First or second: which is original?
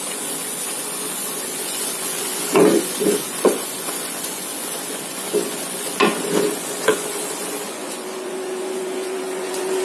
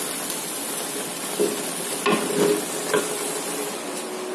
second